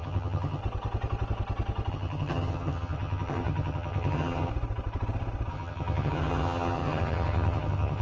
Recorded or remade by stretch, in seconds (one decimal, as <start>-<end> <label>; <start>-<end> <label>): 0.0-0.6 remade; 0.6-1.9 recorded; 1.9-4.5 remade; 4.5-5.5 recorded; 5.5-8.0 remade